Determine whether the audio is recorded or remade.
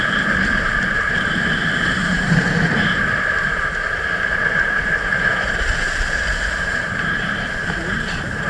remade